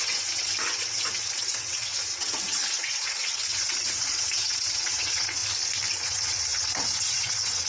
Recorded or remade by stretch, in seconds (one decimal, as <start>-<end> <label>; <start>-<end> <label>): 0.0-5.4 remade; 5.4-5.9 recorded; 5.9-7.7 remade